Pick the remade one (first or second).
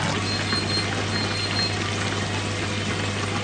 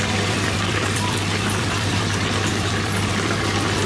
second